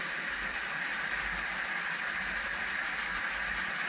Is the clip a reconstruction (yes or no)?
yes